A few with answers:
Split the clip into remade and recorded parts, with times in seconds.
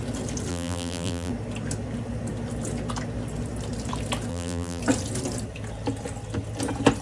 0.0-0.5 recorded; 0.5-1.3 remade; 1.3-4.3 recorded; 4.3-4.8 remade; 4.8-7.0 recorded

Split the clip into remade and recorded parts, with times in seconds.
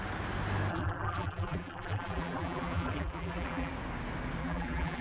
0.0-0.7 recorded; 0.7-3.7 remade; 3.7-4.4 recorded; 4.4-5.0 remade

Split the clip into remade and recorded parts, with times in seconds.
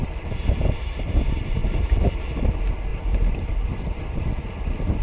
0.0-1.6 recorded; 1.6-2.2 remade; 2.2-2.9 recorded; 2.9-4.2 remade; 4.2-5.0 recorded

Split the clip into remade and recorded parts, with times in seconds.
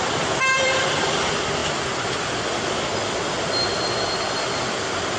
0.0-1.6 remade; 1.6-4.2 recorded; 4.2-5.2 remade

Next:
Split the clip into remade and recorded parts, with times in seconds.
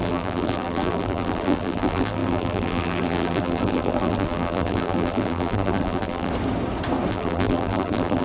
0.0-6.3 remade; 6.3-7.1 recorded; 7.1-8.2 remade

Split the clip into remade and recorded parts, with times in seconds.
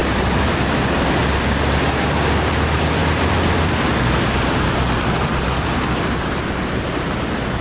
0.0-3.0 recorded; 3.0-6.8 remade; 6.8-7.6 recorded